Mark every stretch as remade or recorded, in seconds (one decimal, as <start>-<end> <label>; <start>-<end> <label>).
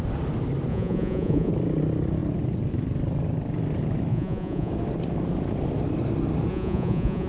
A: 0.0-0.7 recorded; 0.7-1.5 remade; 1.5-4.1 recorded; 4.1-4.7 remade; 4.7-6.5 recorded; 6.5-7.3 remade